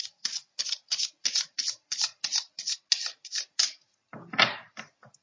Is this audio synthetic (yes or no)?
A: no